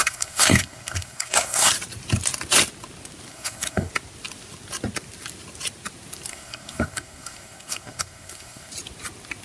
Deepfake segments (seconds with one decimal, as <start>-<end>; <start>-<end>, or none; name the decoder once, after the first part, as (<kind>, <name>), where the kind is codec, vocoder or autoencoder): 0.0-1.7 (codec, SNAC); 3.3-3.9; 6.3-8.7